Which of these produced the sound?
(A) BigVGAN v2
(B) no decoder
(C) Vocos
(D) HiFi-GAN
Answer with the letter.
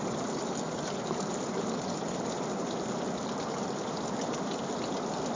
B